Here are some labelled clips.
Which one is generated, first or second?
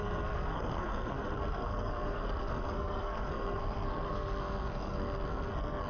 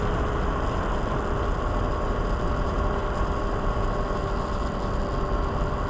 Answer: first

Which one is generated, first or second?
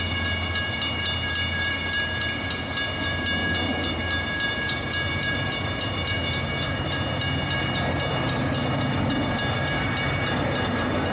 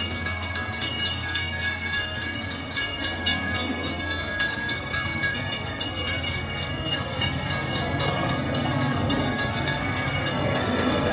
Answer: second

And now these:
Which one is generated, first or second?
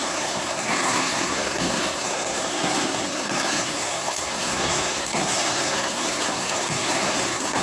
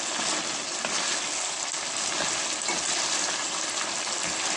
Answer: first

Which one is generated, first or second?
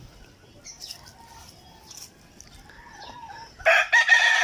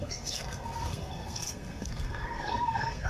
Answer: second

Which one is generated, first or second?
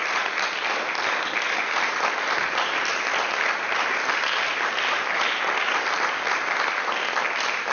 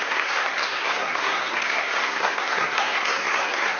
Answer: second